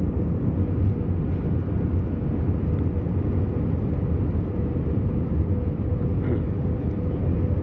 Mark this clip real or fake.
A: real